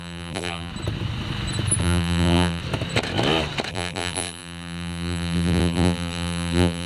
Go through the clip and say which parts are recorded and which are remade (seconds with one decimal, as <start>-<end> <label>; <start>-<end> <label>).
0.0-0.7 remade; 0.7-1.8 recorded; 1.8-2.6 remade; 2.6-3.7 recorded; 3.7-6.9 remade